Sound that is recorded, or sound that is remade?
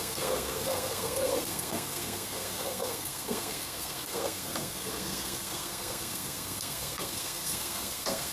remade